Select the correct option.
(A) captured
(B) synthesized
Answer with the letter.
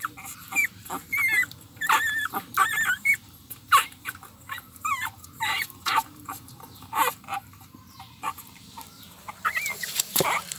B